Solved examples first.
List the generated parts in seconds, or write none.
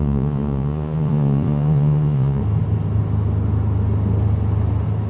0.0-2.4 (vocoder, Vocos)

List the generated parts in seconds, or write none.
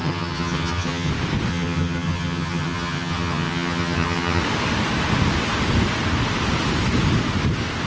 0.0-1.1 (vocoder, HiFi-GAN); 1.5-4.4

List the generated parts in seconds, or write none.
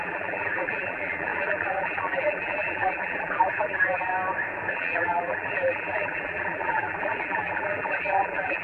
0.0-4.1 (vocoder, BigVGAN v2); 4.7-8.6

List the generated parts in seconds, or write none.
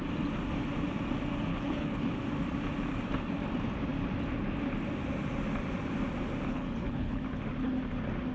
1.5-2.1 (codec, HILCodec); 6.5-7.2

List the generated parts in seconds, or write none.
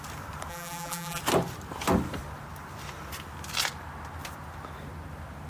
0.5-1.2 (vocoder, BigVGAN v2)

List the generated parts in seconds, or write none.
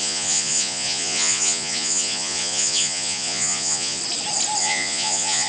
0.0-4.0 (vocoder, Vocos); 4.6-5.5